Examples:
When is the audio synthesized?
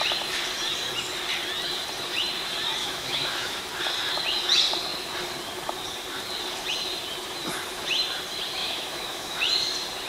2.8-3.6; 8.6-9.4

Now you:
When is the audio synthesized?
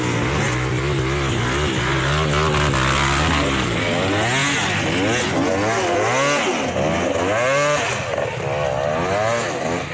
none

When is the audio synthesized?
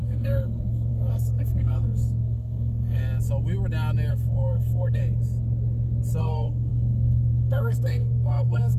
0.0-3.0; 4.1-5.0; 6.2-8.8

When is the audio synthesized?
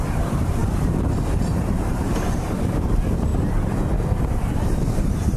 0.0-3.3; 4.2-5.4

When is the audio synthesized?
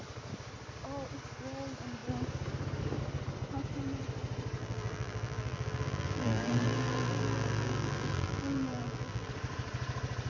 4.6-9.3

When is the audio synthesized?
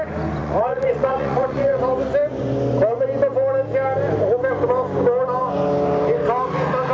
0.4-1.8